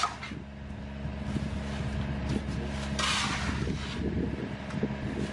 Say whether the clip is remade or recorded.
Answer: recorded